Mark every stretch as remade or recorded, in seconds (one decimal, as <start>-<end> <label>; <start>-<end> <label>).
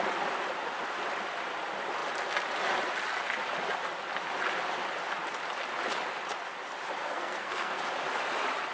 0.0-7.0 recorded; 7.0-7.8 remade; 7.8-8.7 recorded